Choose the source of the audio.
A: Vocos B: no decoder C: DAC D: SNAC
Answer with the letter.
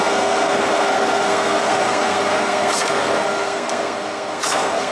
D